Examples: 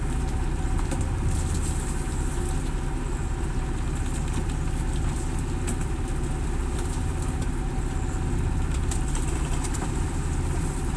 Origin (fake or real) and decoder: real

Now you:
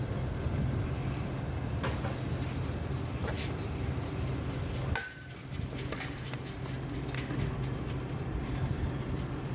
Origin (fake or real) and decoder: real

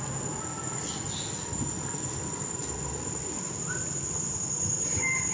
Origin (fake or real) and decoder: real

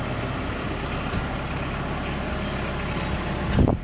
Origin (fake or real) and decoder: real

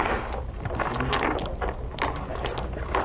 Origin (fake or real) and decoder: real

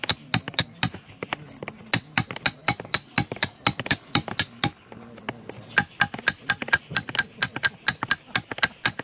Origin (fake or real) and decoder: real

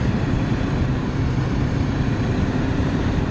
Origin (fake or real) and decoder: fake, vocoder, BigVGAN v2